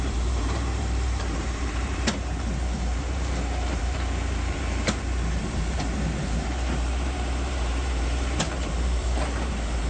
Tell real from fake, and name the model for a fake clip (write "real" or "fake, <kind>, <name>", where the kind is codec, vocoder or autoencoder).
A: fake, vocoder, BigVGAN v2